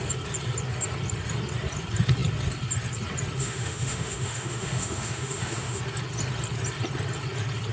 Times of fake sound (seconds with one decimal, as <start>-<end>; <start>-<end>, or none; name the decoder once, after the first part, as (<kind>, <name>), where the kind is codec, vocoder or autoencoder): 3.4-5.8 (autoencoder, DAC-VAE)